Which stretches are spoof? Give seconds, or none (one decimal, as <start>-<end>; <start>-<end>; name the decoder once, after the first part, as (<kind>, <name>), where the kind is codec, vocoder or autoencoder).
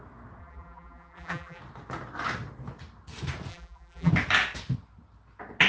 0.4-1.6 (vocoder, BigVGAN v2); 3.5-4.1